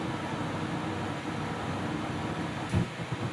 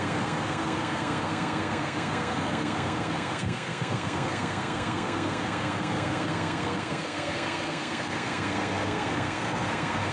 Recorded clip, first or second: first